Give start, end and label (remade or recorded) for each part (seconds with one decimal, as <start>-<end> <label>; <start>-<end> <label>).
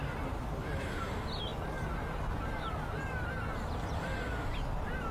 0.0-5.1 recorded